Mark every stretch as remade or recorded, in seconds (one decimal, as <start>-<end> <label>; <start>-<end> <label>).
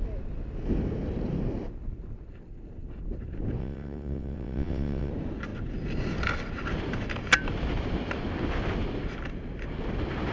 0.0-3.6 recorded; 3.6-5.1 remade; 5.1-10.3 recorded